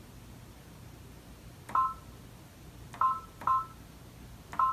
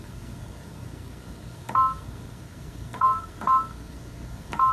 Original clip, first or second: first